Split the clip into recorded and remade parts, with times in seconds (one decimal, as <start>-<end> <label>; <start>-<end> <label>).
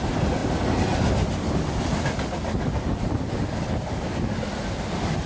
0.0-5.3 recorded